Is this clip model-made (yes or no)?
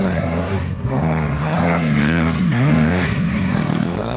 yes